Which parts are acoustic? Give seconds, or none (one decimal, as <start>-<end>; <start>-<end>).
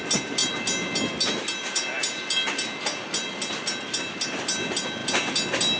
0.0-5.8